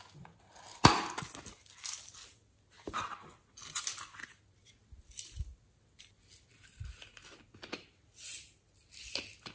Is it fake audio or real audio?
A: real